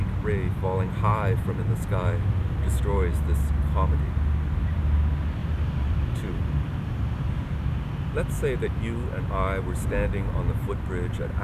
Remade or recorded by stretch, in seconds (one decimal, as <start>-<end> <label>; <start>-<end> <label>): 0.0-1.1 recorded; 1.1-2.8 remade; 2.8-5.4 recorded; 5.4-7.3 remade; 7.3-11.4 recorded

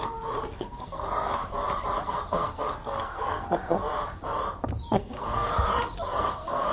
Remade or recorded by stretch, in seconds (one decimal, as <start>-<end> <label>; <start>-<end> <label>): 0.0-1.4 remade; 1.4-2.0 recorded; 2.0-3.8 remade; 3.8-4.9 recorded; 4.9-5.5 remade; 5.5-6.2 recorded; 6.2-6.7 remade

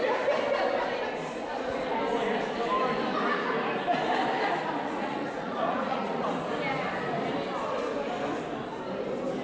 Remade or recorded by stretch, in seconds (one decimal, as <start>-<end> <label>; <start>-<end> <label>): 0.0-1.4 recorded; 1.4-2.0 remade; 2.0-4.8 recorded; 4.8-6.3 remade; 6.3-9.4 recorded